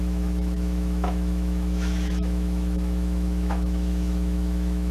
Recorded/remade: remade